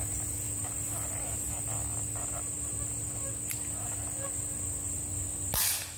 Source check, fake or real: real